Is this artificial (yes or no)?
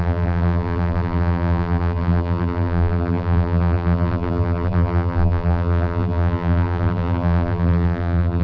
yes